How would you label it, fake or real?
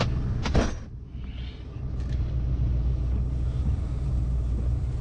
real